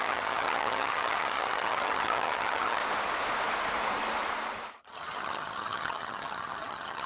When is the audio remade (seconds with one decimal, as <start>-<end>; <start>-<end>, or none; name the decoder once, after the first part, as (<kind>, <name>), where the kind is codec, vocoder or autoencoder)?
0.0-2.8 (vocoder, HiFi-GAN); 4.7-7.1